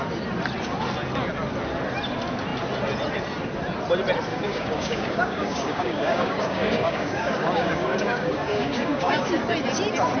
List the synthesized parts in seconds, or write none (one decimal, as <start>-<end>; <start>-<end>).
4.3-9.3